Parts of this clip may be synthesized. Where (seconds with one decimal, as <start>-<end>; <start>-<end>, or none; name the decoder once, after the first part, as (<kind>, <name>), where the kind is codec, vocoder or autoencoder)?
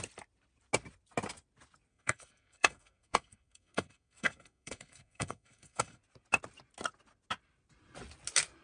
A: 1.9-6.0 (codec, SNAC)